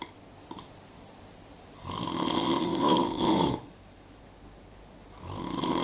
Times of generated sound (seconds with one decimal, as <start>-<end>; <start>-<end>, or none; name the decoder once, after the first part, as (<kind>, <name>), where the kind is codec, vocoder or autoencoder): 2.7-4.2 (autoencoder, DAC-VAE)